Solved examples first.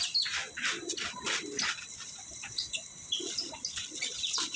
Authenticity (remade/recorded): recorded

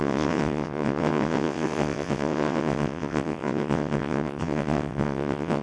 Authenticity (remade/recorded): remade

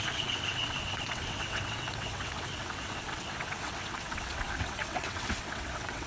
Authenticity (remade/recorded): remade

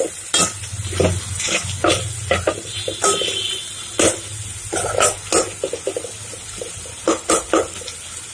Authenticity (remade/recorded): recorded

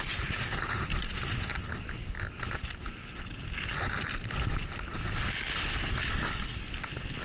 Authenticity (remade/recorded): recorded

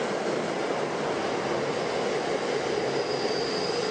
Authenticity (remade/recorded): recorded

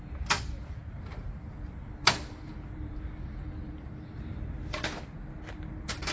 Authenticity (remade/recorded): recorded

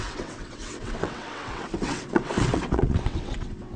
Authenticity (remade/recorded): remade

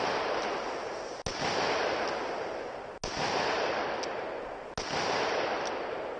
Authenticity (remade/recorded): recorded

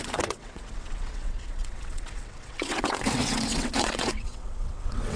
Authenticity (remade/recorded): remade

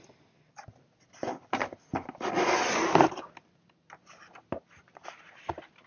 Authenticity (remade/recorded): recorded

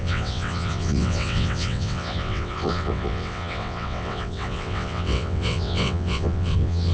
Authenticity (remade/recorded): remade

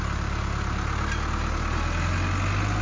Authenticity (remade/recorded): recorded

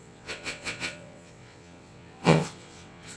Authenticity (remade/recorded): remade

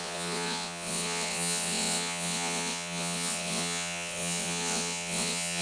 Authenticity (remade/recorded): remade